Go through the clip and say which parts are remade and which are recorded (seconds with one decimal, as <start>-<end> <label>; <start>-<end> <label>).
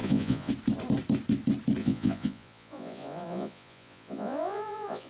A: 0.0-0.5 remade; 0.5-1.8 recorded; 1.8-5.1 remade